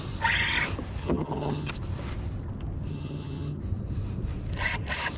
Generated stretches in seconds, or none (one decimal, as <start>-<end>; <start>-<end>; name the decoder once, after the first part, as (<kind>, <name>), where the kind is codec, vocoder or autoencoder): 1.0-1.7 (vocoder, HiFi-GAN); 2.9-3.6